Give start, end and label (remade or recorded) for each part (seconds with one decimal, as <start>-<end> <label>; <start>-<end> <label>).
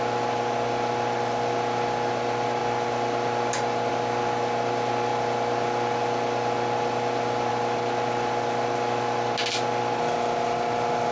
0.0-11.1 recorded